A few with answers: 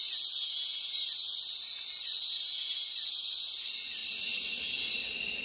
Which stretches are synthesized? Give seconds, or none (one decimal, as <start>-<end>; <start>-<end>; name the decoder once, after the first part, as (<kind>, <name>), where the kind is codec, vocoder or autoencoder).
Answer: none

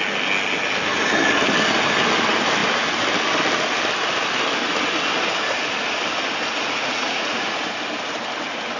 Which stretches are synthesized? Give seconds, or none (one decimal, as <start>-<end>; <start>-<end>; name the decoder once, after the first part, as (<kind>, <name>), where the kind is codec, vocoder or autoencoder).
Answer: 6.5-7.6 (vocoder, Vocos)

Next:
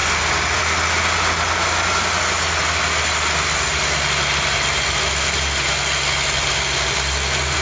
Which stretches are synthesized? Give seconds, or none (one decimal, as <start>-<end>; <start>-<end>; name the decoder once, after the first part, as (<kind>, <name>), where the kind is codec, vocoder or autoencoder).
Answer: none

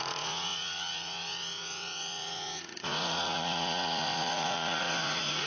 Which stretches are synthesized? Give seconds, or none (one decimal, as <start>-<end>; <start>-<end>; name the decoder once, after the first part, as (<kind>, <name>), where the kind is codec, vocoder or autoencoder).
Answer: 0.0-5.5 (vocoder, Vocos)